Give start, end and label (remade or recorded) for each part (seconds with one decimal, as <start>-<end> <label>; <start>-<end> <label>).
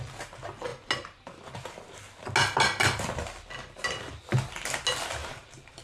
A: 0.0-5.2 recorded; 5.2-5.8 remade